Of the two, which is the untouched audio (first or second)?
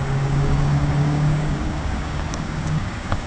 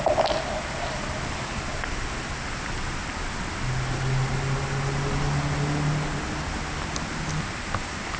second